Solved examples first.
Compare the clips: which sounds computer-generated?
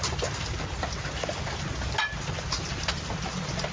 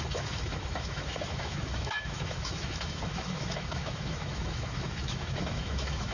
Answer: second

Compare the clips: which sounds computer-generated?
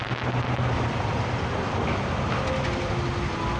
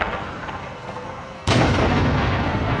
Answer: second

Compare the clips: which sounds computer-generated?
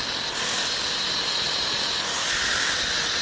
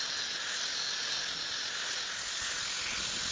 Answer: first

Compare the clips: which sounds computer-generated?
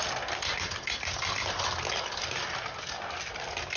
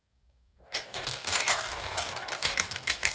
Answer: second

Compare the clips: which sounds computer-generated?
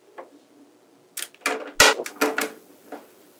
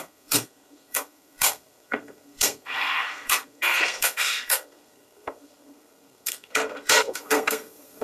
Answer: second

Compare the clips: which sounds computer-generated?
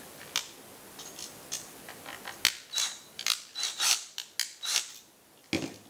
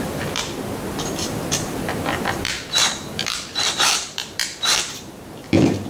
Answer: second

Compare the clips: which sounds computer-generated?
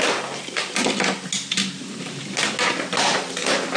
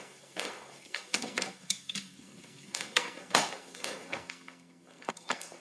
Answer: second